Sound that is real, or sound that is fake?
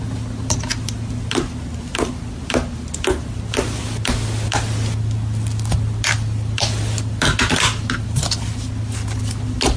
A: real